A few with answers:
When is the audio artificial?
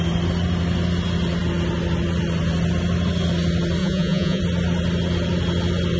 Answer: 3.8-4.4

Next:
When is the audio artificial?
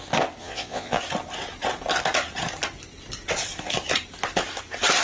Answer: 0.4-1.0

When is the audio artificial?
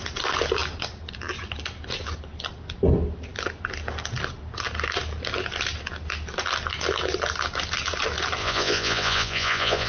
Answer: 8.4-9.9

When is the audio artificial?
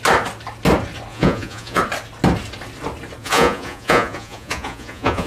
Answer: 1.1-1.8; 3.2-5.3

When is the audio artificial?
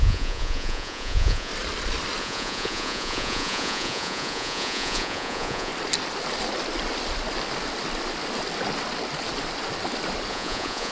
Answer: 0.0-1.5; 2.2-5.7; 10.3-10.9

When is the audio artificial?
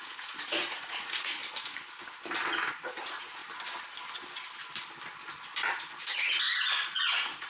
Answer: 0.0-1.4; 2.7-3.4; 5.7-7.5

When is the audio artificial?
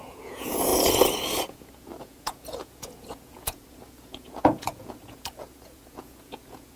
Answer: 0.0-0.7; 1.4-6.8